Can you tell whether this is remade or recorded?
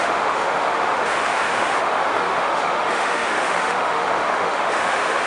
remade